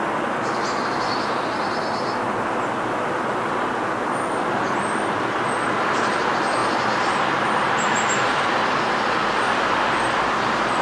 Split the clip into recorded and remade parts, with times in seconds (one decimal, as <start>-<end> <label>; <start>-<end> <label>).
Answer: 0.0-6.6 recorded; 6.6-8.6 remade; 8.6-10.8 recorded